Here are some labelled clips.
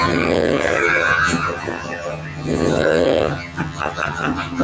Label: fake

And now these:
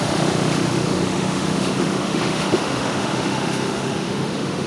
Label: fake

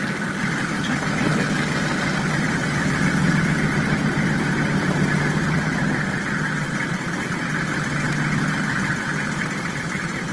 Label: real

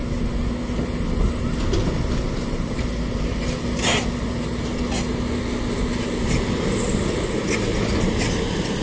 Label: real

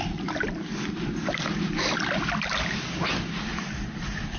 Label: real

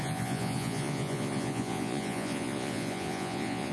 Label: fake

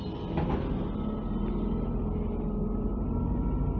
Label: real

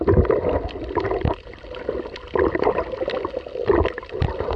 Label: real